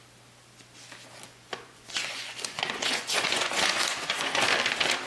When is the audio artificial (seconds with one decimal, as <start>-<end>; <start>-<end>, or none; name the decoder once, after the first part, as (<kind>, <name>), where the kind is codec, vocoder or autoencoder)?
1.3-4.4 (vocoder, Vocos)